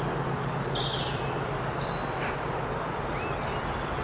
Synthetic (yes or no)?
no